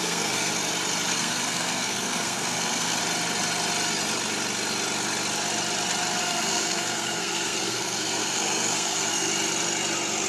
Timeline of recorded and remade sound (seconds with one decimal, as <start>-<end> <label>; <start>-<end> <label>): 0.0-0.5 remade; 0.5-1.1 recorded; 1.1-3.0 remade; 3.0-6.2 recorded; 6.2-9.3 remade; 9.3-10.3 recorded